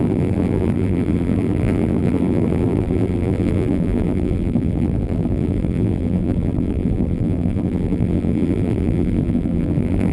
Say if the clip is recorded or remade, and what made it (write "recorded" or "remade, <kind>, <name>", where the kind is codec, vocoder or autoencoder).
remade, vocoder, BigVGAN v2